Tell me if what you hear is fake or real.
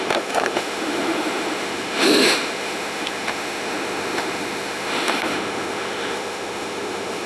fake